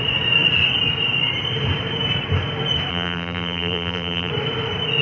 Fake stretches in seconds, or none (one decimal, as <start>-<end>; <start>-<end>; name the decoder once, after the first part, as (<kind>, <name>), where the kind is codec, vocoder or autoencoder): 2.9-4.3 (vocoder, BigVGAN v2)